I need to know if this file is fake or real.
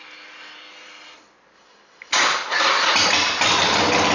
real